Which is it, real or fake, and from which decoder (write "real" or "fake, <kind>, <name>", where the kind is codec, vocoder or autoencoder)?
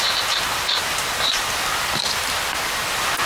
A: fake, vocoder, BigVGAN v2